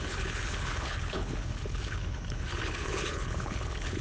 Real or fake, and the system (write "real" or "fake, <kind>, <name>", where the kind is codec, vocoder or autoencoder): fake, codec, HILCodec